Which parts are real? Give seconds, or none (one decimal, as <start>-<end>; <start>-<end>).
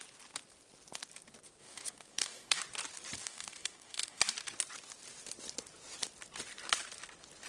0.0-1.6; 2.6-3.2; 4.2-7.5